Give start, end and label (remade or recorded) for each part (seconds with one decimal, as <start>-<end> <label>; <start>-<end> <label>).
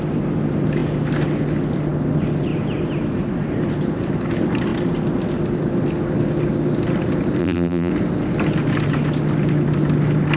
0.0-7.4 recorded; 7.4-7.9 remade; 7.9-10.4 recorded